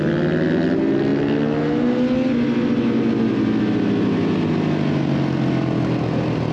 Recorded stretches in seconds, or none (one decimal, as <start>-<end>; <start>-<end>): 0.0-6.5